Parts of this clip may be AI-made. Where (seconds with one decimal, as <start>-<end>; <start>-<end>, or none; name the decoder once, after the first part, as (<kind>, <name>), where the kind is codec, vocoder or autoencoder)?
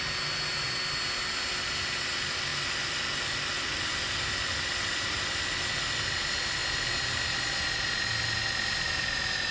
none